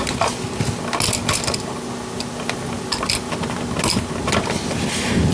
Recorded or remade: recorded